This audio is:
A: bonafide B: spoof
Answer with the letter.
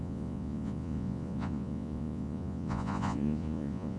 B